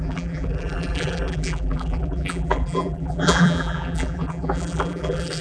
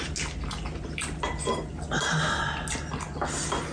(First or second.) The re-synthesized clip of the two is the first